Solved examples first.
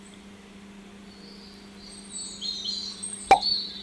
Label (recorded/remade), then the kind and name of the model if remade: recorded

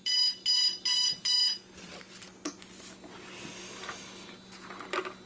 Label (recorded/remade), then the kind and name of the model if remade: recorded